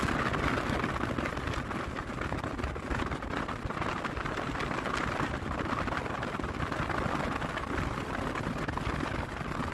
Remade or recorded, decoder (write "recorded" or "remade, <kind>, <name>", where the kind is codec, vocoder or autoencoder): recorded